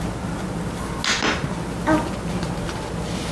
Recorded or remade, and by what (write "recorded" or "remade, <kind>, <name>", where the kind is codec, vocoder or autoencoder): recorded